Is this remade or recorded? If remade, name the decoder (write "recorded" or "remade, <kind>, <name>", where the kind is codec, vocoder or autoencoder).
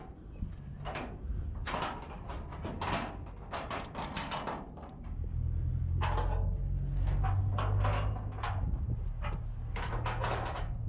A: recorded